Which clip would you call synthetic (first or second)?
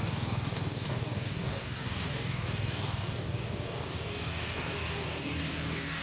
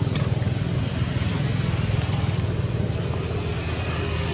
first